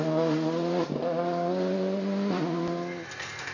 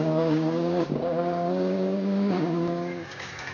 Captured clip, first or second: first